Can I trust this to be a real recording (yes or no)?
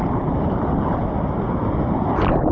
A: yes